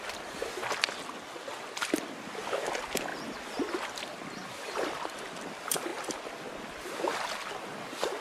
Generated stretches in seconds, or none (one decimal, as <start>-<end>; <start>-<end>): none

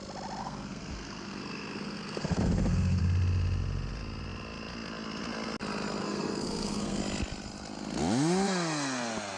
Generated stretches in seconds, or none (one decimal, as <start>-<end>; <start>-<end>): 0.4-3.0; 6.0-7.0

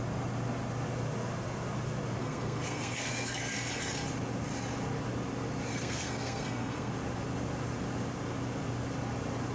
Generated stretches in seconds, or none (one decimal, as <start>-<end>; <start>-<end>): 2.2-3.7; 5.7-6.9